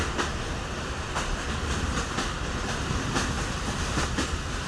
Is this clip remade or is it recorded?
recorded